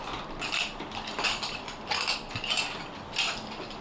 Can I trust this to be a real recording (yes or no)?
yes